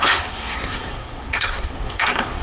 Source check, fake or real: fake